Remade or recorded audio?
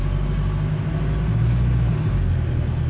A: recorded